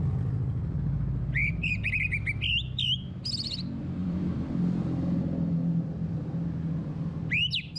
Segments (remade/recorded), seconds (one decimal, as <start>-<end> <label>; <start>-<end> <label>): 0.0-4.0 recorded; 4.0-4.5 remade; 4.5-7.8 recorded